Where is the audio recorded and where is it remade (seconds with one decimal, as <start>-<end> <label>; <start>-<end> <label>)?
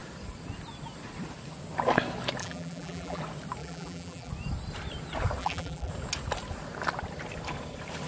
0.0-2.4 recorded; 2.4-3.2 remade; 3.2-3.6 recorded; 3.6-4.3 remade; 4.3-5.4 recorded; 5.4-5.9 remade; 5.9-8.1 recorded